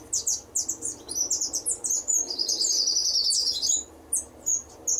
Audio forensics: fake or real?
real